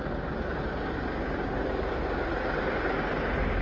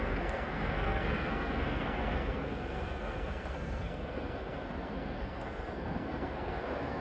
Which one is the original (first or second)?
first